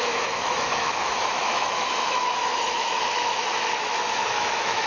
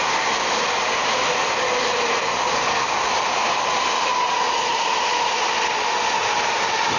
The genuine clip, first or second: second